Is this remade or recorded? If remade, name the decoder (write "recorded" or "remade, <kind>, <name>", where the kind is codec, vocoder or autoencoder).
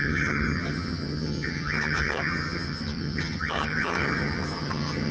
remade, vocoder, HiFi-GAN